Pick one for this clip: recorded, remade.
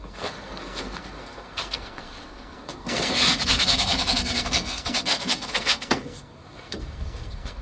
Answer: remade